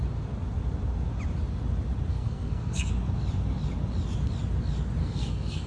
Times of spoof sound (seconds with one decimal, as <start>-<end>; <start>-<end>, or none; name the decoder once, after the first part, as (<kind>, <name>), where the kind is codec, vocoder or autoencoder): 2.1-2.9 (codec, SNAC); 5.0-5.7

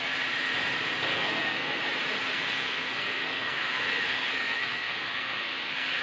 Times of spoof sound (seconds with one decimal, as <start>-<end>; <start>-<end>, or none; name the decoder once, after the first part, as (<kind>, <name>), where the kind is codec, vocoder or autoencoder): 1.1-1.8 (codec, SNAC); 2.3-6.0

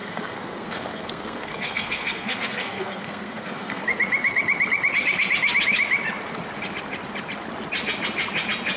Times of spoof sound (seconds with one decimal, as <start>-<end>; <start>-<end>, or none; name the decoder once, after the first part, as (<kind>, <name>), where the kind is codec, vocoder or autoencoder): 0.0-3.8 (codec, SNAC)

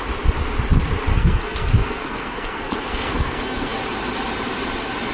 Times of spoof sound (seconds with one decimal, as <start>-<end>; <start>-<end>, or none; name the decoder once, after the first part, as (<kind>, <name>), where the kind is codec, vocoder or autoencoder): 1.1-3.8 (codec, SNAC)

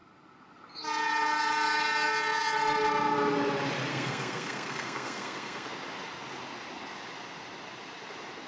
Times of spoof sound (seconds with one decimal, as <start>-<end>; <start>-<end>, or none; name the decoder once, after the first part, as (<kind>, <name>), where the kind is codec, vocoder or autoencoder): 3.9-5.7 (codec, SNAC)

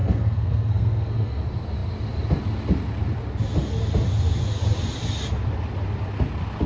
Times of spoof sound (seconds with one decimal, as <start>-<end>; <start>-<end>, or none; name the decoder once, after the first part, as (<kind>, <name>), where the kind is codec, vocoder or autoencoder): 0.0-1.4 (codec, SNAC)

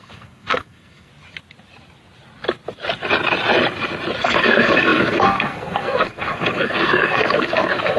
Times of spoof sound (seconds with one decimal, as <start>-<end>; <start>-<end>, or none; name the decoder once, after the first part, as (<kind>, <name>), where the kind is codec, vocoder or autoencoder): 0.0-1.1 (codec, SNAC); 4.2-8.0

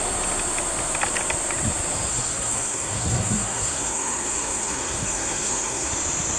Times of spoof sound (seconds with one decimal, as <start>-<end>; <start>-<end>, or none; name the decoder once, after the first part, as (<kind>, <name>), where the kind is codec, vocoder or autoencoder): 2.1-5.9 (codec, SNAC)